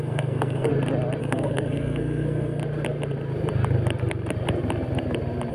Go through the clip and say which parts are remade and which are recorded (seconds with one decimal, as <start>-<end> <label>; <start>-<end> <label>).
0.0-0.7 remade; 0.7-1.2 recorded; 1.2-2.6 remade; 2.6-5.5 recorded

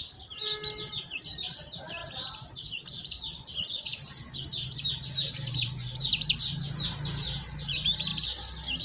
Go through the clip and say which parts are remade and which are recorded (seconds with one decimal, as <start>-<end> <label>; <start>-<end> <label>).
0.0-1.0 recorded; 1.0-8.1 remade; 8.1-8.8 recorded

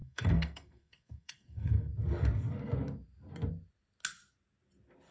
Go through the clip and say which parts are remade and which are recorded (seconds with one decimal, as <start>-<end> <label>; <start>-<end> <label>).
0.0-1.9 remade; 1.9-5.1 recorded

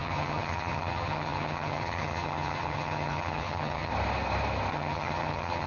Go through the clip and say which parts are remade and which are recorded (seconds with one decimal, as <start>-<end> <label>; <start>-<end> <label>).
0.0-3.9 remade; 3.9-4.7 recorded; 4.7-5.7 remade

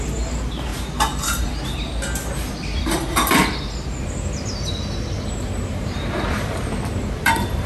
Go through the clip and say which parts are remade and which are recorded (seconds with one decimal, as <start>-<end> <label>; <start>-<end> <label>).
0.0-0.7 remade; 0.7-5.3 recorded; 5.3-7.7 remade

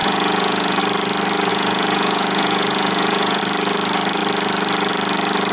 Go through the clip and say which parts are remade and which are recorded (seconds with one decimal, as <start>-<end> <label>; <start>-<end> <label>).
0.0-0.8 remade; 0.8-1.5 recorded; 1.5-3.4 remade; 3.4-5.5 recorded

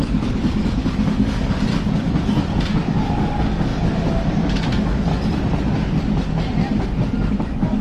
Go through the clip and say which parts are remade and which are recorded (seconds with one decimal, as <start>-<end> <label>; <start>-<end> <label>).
0.0-1.7 remade; 1.7-2.7 recorded; 2.7-5.1 remade; 5.1-7.3 recorded; 7.3-7.8 remade